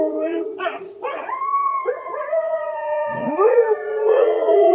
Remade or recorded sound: remade